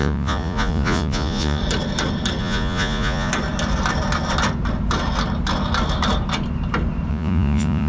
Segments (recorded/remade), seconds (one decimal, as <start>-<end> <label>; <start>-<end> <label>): 0.0-1.6 remade; 1.6-2.4 recorded; 2.4-3.3 remade; 3.3-7.1 recorded; 7.1-7.9 remade